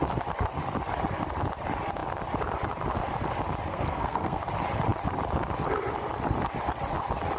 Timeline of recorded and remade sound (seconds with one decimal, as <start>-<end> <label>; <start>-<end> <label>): 0.0-3.7 recorded; 3.7-4.4 remade; 4.4-7.4 recorded